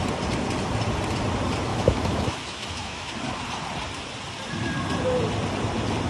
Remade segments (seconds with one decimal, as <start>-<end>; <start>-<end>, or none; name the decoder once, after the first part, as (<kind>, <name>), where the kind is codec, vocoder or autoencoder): 1.7-3.1 (autoencoder, DAC-VAE)